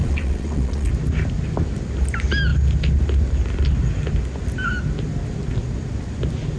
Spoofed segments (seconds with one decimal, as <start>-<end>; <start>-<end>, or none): 0.0-0.9